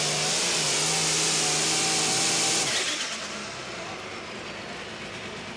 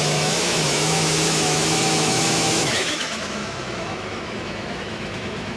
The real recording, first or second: first